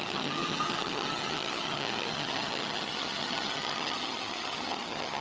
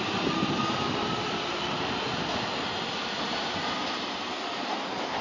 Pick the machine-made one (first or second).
first